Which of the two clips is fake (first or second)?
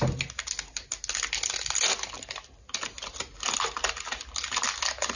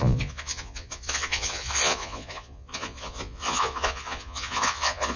second